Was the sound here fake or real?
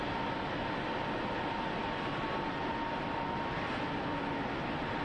real